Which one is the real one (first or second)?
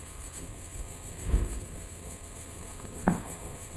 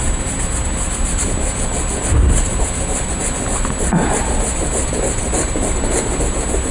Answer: second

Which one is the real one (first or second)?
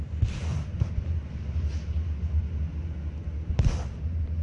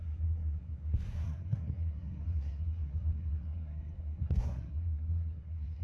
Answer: first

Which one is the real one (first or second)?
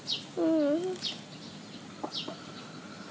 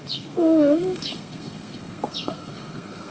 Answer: first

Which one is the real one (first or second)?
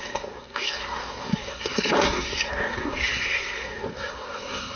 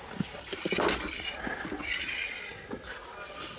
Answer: second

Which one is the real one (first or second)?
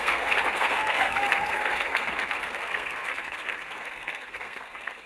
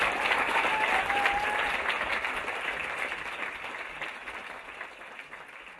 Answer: second